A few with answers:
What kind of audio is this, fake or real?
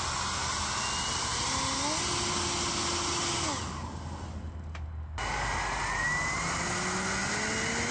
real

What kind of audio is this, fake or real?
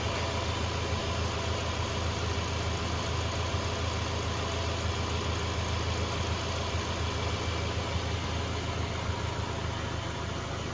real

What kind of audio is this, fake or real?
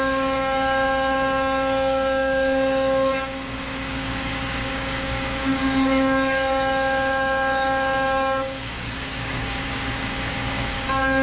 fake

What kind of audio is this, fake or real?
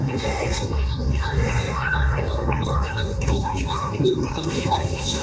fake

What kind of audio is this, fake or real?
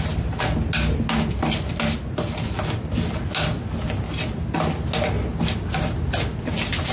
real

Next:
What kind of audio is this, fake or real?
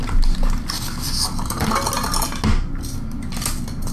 real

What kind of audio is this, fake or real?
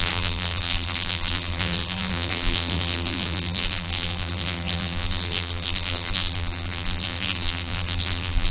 fake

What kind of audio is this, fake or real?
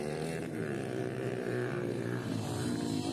fake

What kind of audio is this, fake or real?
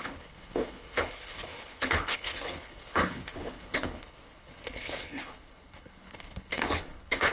fake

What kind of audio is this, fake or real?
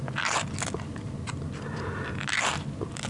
real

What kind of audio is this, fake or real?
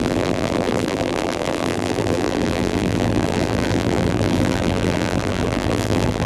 fake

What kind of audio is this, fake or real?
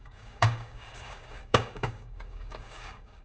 fake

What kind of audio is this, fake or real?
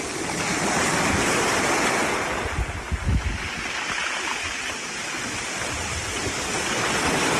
real